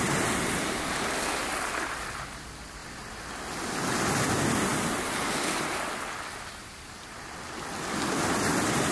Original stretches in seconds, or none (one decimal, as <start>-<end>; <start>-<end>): 0.0-8.9